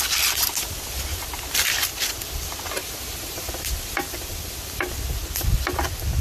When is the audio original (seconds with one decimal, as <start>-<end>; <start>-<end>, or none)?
0.0-1.1; 3.5-6.2

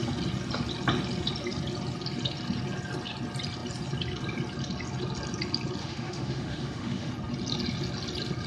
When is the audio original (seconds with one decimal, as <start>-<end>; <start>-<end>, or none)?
0.0-5.8; 7.1-8.5